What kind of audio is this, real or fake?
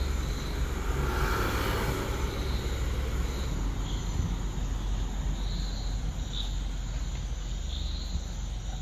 real